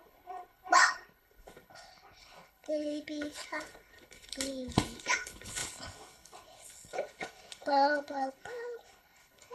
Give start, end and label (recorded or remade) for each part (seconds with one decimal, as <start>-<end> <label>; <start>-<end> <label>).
0.0-9.5 remade